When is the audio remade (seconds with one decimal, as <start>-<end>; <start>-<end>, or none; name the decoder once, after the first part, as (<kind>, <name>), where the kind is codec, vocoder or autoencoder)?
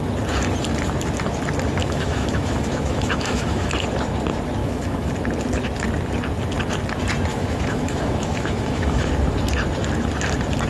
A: 1.8-3.7 (autoencoder, DAC-VAE); 4.6-5.1; 7.3-9.1